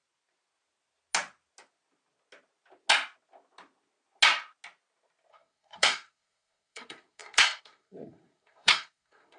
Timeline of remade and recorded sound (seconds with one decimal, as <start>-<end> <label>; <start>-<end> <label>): 0.0-5.3 recorded; 5.3-9.4 remade